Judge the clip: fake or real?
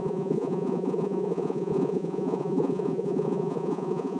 fake